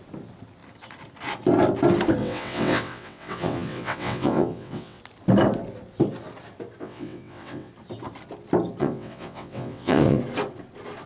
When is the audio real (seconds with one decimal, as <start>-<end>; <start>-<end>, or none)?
0.0-2.2; 5.0-6.8; 7.7-8.8; 10.2-11.1

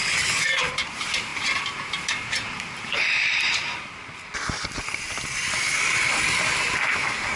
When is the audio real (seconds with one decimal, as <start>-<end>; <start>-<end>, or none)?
0.0-0.6; 4.0-6.9

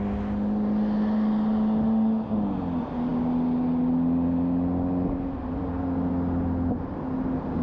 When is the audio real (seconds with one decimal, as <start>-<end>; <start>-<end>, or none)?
0.0-7.6

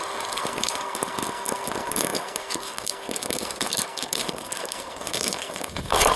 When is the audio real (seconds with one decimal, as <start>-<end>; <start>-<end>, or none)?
none

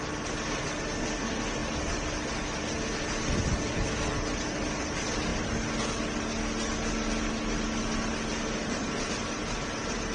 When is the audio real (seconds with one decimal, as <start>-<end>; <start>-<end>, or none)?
0.0-10.1

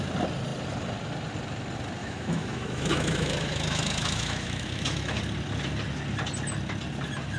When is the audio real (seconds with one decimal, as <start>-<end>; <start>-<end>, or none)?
0.0-2.0; 5.2-7.4

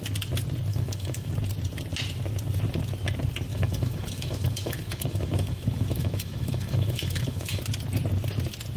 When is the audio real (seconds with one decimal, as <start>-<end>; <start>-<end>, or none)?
0.0-0.7; 1.3-3.5; 7.6-8.8

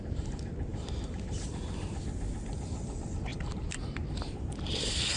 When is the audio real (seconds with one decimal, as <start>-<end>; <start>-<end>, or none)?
0.0-0.7; 2.0-3.3